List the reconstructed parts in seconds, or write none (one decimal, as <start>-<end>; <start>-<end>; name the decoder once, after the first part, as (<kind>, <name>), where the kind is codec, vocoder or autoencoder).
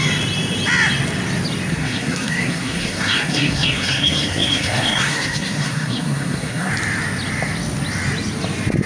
1.7-6.7 (codec, SNAC)